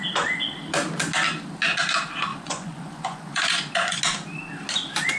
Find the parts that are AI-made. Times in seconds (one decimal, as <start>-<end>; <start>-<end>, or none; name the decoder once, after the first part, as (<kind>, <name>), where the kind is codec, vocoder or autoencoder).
2.3-4.0 (vocoder, Vocos)